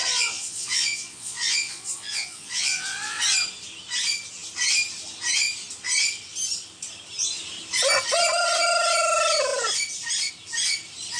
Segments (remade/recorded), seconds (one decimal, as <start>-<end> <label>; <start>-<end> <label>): 0.0-3.2 remade; 3.2-11.2 recorded